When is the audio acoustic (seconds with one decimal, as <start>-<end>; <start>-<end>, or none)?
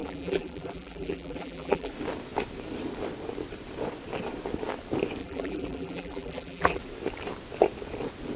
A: 1.9-5.2; 6.8-8.4